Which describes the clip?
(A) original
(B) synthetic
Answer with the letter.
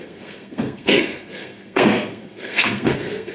B